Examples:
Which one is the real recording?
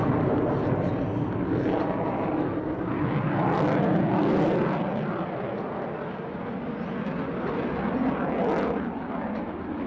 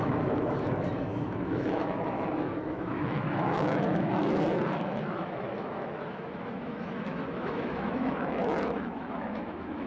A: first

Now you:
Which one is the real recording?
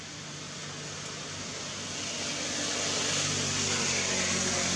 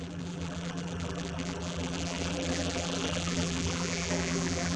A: first